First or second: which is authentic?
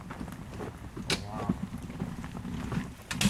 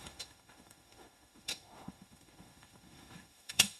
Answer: first